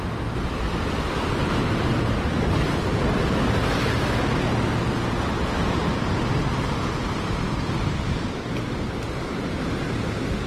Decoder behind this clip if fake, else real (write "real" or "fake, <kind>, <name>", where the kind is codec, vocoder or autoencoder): real